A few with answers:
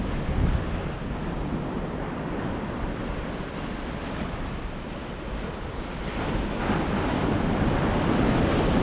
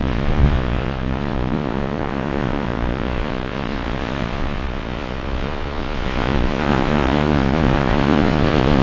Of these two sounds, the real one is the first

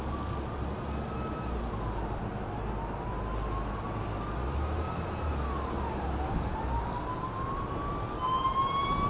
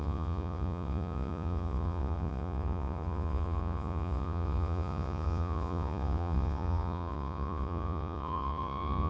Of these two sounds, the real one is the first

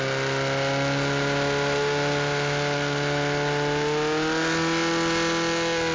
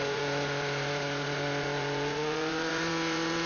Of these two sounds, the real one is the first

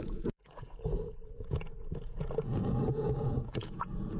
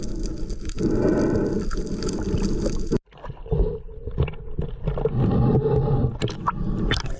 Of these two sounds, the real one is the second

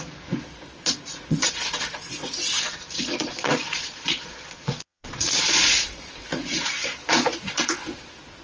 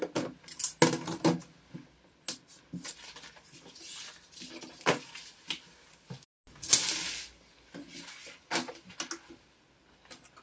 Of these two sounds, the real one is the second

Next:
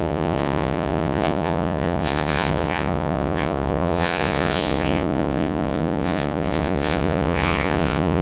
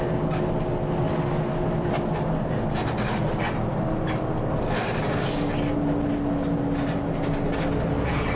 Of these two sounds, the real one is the second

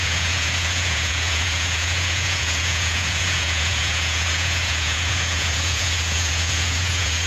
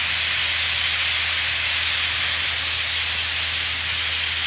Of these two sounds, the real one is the second